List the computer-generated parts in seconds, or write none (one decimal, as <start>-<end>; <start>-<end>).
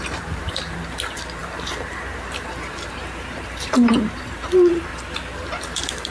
0.0-4.9; 5.6-6.1